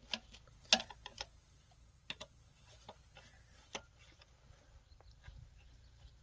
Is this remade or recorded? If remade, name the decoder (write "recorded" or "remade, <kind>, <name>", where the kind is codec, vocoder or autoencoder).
recorded